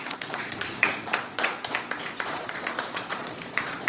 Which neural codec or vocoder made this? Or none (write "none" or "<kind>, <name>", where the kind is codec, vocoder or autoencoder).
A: vocoder, Vocos